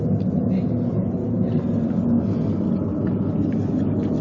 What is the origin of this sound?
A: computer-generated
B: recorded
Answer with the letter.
B